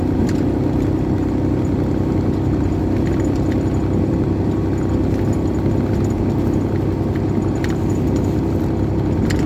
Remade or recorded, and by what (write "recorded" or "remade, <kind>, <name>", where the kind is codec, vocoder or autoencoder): recorded